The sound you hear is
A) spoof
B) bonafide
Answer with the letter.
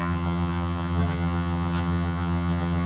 A